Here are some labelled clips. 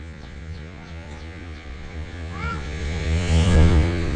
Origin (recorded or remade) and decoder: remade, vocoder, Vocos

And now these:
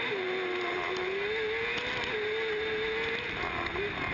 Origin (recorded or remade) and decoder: recorded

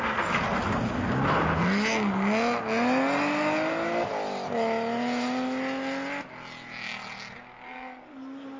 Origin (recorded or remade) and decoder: recorded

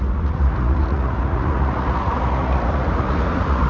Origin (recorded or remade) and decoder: remade, vocoder, Vocos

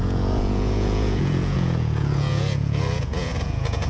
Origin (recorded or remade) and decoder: remade, vocoder, Vocos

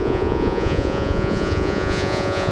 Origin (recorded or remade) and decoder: remade, vocoder, Vocos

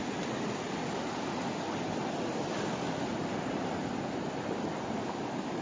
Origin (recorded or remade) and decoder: recorded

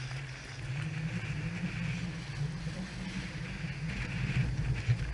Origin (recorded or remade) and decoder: recorded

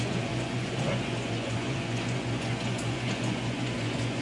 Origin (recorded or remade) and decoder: remade, vocoder, Vocos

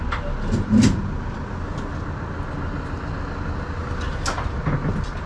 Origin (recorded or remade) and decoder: recorded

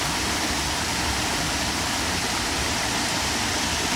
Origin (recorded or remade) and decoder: recorded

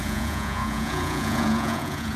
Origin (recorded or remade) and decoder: remade, vocoder, Vocos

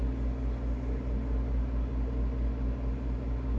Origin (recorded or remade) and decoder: recorded